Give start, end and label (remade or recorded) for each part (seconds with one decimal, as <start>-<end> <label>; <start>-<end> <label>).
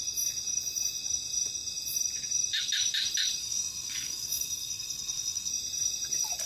0.0-3.4 recorded; 3.4-5.5 remade; 5.5-6.5 recorded